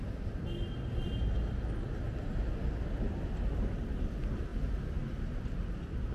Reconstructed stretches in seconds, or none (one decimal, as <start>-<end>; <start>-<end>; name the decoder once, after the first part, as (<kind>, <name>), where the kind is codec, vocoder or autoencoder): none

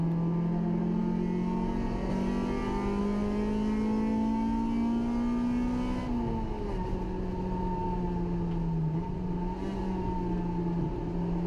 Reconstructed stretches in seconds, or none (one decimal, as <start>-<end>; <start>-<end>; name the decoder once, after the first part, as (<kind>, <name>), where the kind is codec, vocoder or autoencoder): none

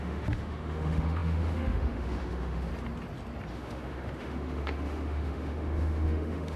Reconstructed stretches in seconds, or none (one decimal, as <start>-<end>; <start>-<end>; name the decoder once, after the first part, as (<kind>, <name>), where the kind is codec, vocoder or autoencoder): 0.0-2.7 (autoencoder, DAC-VAE); 3.5-6.6

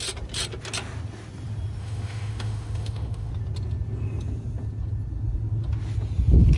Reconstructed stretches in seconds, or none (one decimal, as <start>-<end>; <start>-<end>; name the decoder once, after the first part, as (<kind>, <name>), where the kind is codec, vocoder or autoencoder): 1.8-3.3 (autoencoder, DAC-VAE)

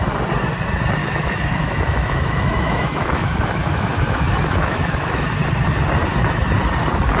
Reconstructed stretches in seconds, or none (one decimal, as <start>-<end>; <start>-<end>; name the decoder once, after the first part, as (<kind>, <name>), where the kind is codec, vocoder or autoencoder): 1.0-5.3 (autoencoder, DAC-VAE)

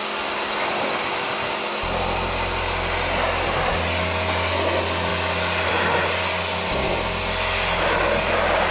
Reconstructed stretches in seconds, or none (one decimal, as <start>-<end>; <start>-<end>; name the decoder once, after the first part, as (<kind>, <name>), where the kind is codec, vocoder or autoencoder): none

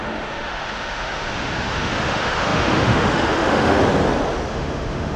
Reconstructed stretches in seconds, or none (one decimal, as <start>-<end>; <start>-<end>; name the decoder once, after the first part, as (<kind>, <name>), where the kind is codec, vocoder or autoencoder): 0.0-3.8 (autoencoder, DAC-VAE); 4.5-5.2